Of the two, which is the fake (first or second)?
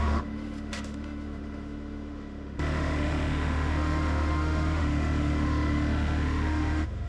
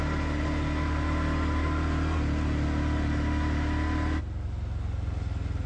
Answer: first